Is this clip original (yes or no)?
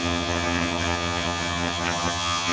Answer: no